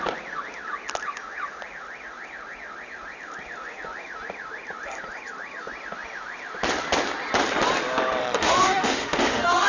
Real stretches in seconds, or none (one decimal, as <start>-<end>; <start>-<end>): 0.0-8.2